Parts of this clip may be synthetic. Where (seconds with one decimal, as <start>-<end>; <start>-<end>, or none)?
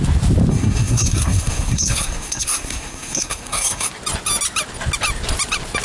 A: 0.5-3.9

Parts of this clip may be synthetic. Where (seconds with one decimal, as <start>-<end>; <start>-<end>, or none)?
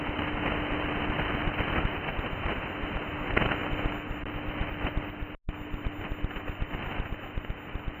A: none